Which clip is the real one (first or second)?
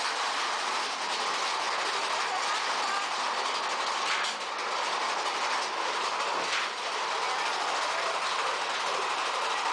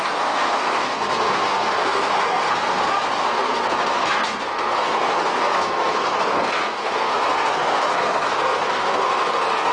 first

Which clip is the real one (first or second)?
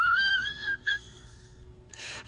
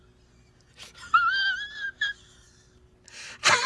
second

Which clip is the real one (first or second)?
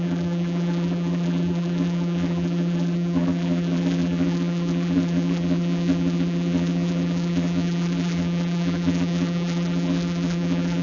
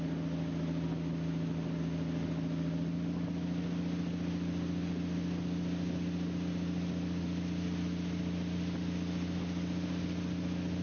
second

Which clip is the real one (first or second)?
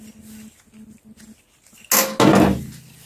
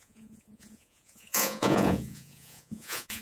first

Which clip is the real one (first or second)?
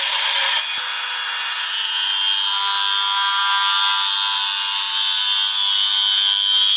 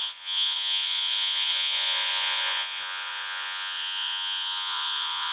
first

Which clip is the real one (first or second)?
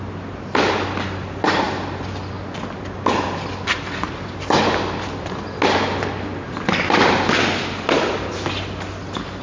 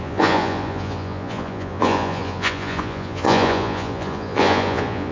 first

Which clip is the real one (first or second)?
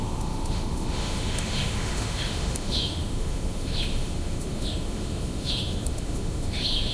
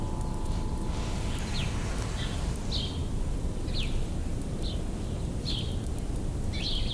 second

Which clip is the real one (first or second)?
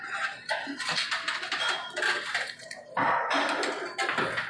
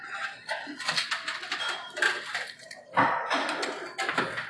first